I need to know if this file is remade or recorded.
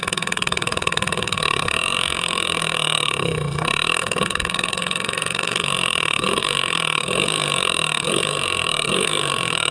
remade